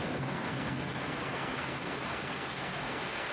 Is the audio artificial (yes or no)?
yes